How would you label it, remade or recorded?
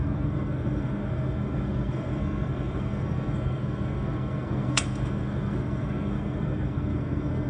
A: remade